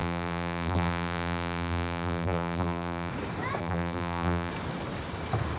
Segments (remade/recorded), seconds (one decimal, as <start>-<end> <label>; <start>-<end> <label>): 0.0-3.1 remade; 3.1-3.6 recorded; 3.6-4.5 remade; 4.5-5.6 recorded